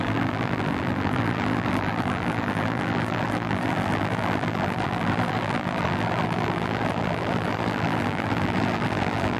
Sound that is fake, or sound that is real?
fake